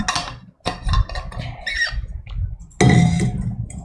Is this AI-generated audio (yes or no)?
no